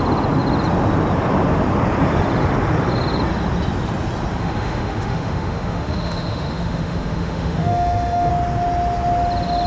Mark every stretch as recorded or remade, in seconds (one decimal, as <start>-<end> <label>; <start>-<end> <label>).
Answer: 0.0-4.4 recorded; 4.4-8.3 remade; 8.3-9.7 recorded